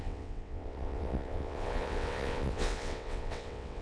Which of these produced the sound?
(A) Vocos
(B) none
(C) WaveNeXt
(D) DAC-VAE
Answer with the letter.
C